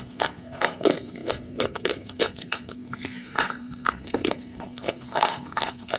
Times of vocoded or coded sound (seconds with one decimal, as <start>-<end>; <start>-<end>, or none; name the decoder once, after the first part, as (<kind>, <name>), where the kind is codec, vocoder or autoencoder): 0.0-6.0 (codec, SNAC)